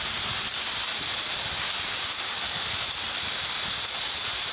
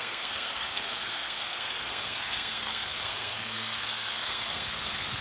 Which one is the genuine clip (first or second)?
first